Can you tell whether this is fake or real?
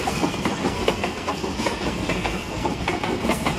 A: fake